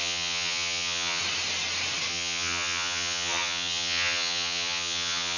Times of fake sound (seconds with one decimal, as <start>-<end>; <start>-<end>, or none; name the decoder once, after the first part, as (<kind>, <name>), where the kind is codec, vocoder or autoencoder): 0.0-1.2 (vocoder, HiFi-GAN); 2.1-5.4